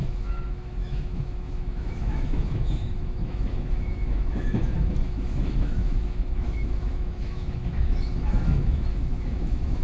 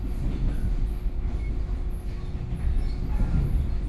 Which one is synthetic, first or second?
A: first